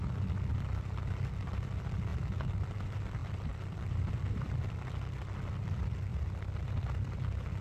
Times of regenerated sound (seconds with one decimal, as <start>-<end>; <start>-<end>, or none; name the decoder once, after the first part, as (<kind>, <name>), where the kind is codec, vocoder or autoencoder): 3.2-4.7 (vocoder, BigVGAN v2); 6.1-6.6